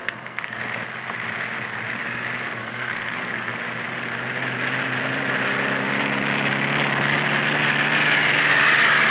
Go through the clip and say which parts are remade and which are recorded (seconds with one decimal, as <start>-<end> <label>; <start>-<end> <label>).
0.0-0.6 remade; 0.6-2.6 recorded; 2.6-3.5 remade; 3.5-9.1 recorded